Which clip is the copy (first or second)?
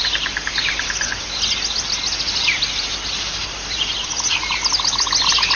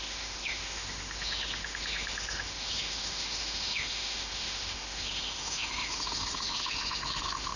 second